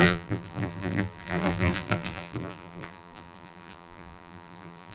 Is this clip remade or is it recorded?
remade